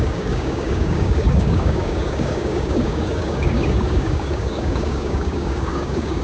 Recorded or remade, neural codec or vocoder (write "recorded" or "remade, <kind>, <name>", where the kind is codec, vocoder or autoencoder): remade, codec, DAC